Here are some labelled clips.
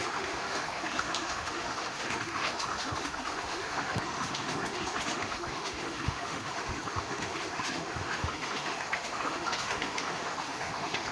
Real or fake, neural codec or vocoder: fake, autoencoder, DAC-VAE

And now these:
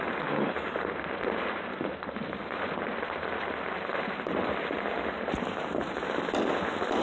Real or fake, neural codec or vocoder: real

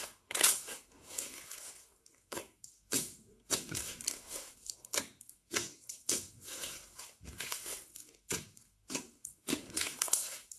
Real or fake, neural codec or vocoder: fake, codec, SNAC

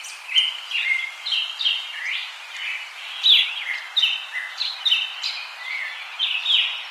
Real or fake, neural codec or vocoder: real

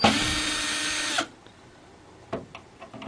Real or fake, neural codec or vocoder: real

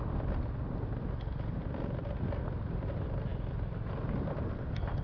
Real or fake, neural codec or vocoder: real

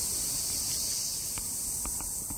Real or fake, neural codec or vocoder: real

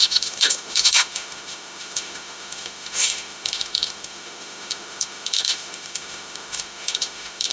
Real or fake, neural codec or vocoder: fake, autoencoder, DAC-VAE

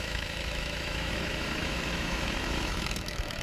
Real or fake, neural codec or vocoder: fake, autoencoder, DAC-VAE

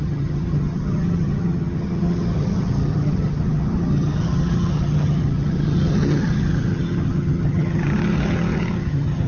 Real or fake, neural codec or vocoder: fake, vocoder, HiFi-GAN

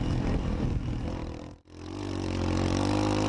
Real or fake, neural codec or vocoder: real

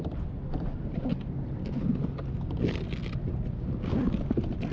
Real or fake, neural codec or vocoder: real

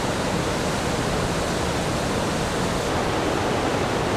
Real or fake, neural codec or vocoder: real